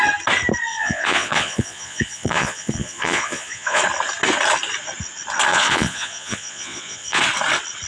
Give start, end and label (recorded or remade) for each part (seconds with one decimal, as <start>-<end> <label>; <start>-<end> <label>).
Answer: 0.0-0.7 recorded; 0.7-3.8 remade; 3.8-5.5 recorded; 5.5-7.2 remade; 7.2-7.9 recorded

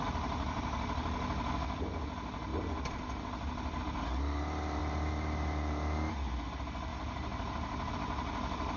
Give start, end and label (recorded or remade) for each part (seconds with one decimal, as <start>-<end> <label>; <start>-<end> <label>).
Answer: 0.0-6.9 recorded; 6.9-7.9 remade; 7.9-8.8 recorded

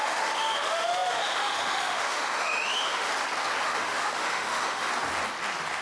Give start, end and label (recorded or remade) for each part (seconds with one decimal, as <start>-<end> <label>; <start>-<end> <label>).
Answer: 0.0-3.1 remade; 3.1-3.6 recorded; 3.6-4.9 remade; 4.9-5.8 recorded